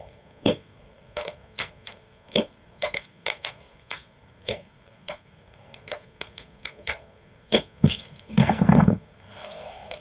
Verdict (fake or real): fake